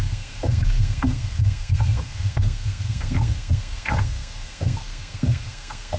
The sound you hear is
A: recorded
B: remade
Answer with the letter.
B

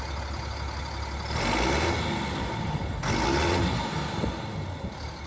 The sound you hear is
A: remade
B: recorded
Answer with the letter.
B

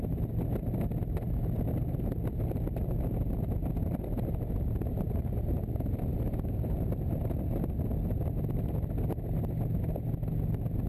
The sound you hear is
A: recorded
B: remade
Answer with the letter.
A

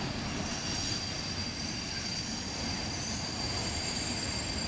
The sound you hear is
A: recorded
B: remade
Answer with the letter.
A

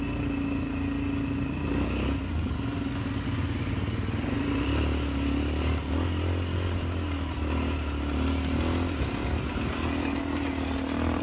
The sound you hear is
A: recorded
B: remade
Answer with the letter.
A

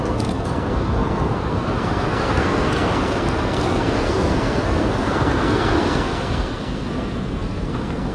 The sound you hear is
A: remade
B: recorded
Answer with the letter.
A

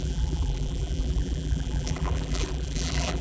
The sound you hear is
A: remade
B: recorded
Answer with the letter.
A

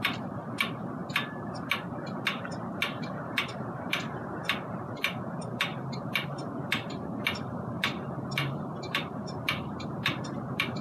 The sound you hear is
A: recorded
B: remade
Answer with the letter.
B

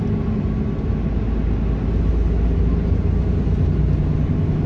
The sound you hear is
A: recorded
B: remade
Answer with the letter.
A